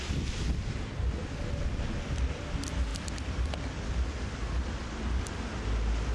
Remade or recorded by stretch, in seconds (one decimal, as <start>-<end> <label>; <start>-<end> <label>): 0.0-6.1 recorded